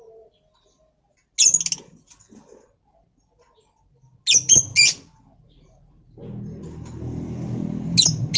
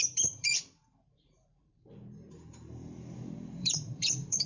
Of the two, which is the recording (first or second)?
first